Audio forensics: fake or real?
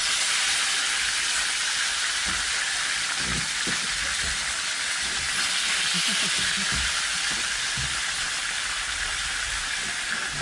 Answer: real